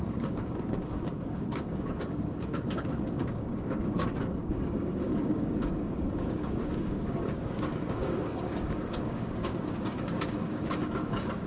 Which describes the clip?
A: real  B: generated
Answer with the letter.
B